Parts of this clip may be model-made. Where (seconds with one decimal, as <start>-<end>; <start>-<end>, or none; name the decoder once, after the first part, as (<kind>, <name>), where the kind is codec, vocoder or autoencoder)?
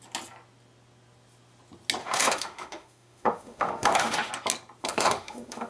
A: 2.0-4.3 (autoencoder, DAC-VAE); 4.8-5.7